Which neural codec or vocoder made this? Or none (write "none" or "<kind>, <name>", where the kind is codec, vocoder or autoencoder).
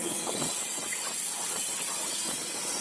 vocoder, WaveNeXt